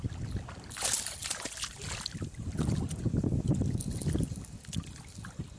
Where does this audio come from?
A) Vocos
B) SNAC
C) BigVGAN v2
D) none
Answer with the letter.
D